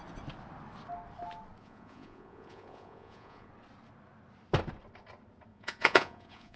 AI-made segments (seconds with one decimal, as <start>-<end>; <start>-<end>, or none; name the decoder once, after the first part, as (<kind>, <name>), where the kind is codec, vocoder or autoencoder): 1.6-3.5 (vocoder, Vocos); 5.5-6.6